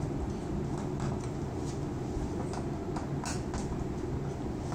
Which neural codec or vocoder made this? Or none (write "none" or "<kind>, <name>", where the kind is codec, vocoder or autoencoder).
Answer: none